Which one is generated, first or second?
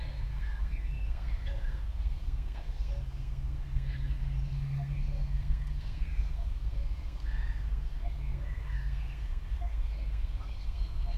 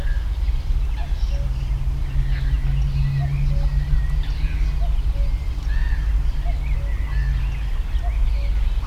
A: first